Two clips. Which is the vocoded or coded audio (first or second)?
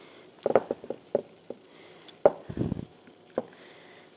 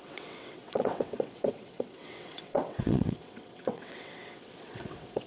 second